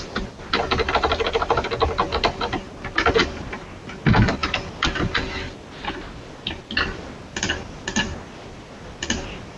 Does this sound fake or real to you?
real